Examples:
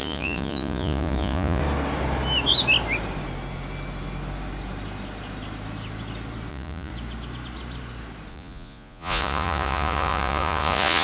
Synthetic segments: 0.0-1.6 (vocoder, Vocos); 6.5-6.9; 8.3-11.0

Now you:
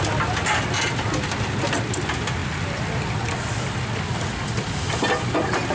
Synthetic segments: none